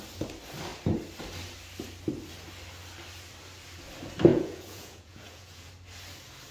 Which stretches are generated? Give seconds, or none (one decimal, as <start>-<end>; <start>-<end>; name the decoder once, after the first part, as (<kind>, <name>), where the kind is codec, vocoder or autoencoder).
4.3-5.7 (vocoder, Vocos)